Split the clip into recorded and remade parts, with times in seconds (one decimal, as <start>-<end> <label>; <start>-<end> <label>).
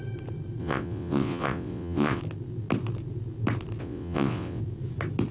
0.0-0.6 recorded; 0.6-2.2 remade; 2.2-3.8 recorded; 3.8-4.6 remade; 4.6-5.3 recorded